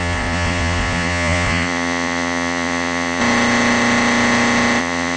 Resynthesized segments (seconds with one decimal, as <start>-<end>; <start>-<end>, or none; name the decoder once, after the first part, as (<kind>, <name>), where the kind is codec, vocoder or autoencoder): 0.0-3.2 (vocoder, Vocos); 4.8-5.2